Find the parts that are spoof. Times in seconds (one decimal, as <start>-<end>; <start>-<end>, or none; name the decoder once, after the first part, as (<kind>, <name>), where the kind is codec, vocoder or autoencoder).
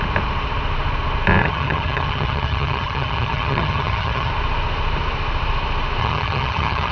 1.4-4.3 (vocoder, HiFi-GAN); 6.0-6.9